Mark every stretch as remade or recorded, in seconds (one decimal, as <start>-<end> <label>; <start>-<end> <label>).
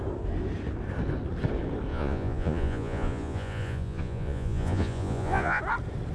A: 0.0-1.9 recorded; 1.9-5.6 remade; 5.6-6.1 recorded